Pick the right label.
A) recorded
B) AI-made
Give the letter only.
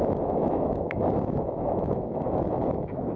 B